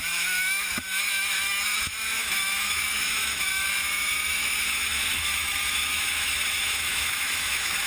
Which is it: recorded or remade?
remade